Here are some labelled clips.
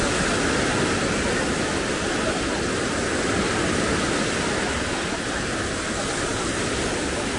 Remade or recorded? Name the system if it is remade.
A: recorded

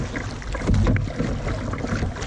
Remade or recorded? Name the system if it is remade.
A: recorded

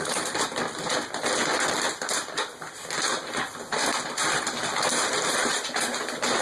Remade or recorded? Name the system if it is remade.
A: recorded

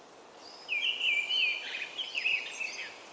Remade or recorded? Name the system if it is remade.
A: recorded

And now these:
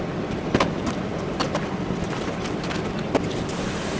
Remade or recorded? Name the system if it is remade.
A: recorded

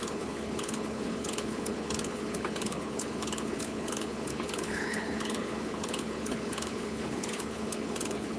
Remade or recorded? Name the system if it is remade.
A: remade, codec, HILCodec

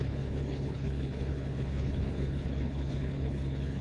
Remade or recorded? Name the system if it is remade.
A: remade, codec, HILCodec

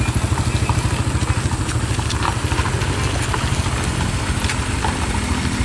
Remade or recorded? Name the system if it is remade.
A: recorded